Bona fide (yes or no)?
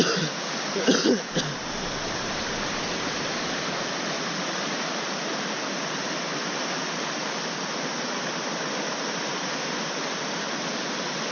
yes